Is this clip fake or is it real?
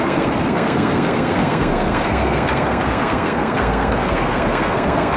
fake